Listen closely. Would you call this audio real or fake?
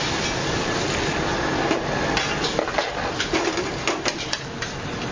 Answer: real